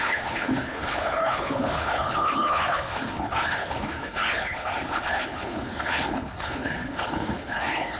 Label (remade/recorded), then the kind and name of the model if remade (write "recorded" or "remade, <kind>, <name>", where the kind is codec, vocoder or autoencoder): remade, codec, HILCodec